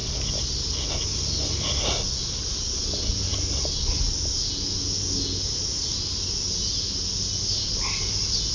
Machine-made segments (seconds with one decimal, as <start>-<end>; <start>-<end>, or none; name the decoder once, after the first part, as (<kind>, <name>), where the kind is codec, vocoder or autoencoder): none